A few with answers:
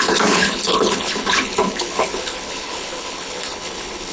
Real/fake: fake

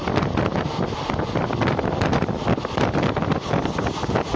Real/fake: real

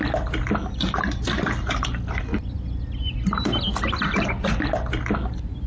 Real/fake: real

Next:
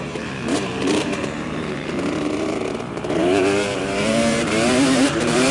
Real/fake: fake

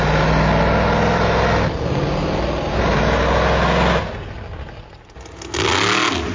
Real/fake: real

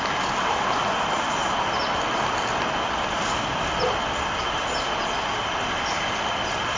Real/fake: real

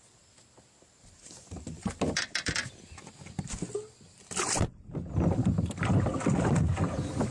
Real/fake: real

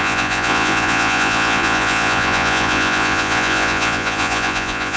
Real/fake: fake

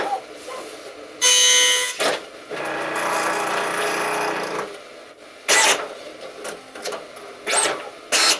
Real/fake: real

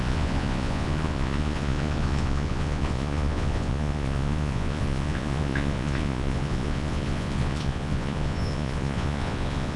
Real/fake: fake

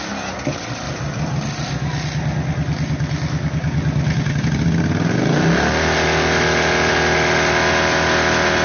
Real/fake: real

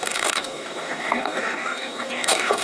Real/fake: fake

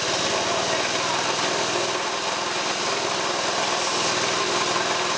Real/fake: real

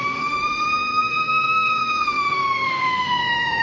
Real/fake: fake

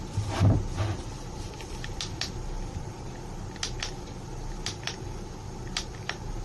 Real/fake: real